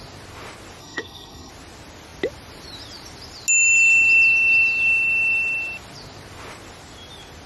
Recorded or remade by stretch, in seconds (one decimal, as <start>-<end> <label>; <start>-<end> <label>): 0.0-0.8 recorded; 0.8-1.5 remade; 1.5-7.5 recorded